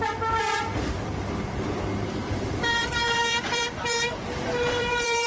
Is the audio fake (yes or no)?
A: yes